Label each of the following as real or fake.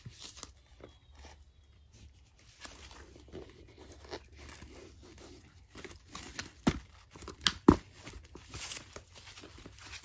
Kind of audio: real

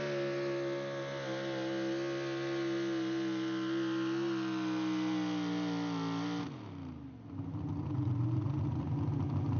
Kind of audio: real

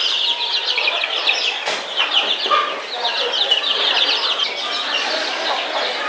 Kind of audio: real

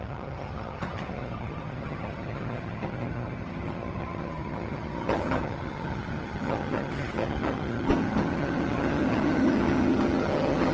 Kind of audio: fake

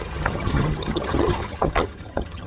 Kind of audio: fake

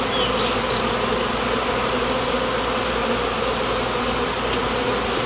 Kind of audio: real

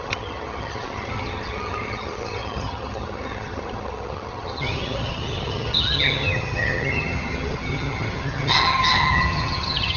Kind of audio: fake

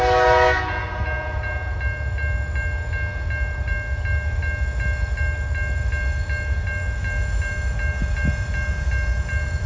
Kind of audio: real